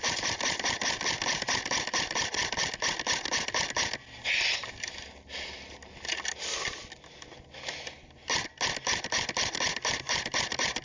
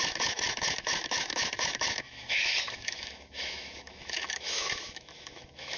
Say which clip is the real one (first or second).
first